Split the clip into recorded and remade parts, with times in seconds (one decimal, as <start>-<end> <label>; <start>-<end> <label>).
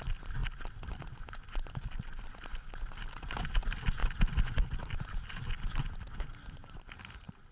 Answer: 0.0-7.5 recorded